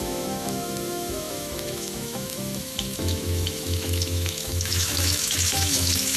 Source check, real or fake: fake